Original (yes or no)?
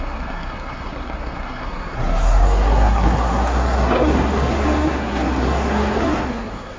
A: no